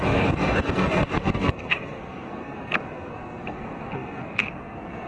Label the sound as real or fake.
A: fake